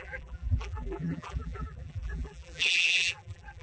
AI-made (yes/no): yes